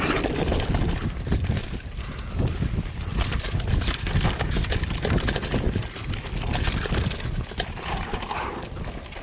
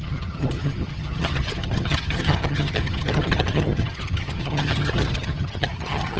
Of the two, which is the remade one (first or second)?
second